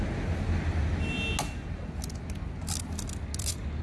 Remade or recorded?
recorded